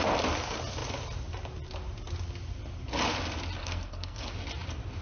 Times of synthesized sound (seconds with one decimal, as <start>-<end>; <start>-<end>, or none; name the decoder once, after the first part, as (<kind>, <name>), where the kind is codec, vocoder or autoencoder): 3.6-4.3 (codec, SNAC)